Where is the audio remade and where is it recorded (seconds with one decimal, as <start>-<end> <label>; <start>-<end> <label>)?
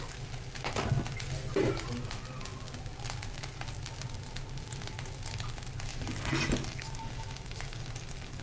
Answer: 0.0-8.4 recorded